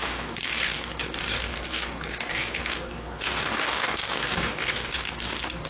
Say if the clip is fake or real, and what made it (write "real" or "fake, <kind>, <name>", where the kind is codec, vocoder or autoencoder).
fake, codec, DAC